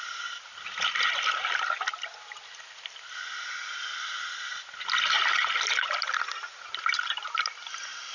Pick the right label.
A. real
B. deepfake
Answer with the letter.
A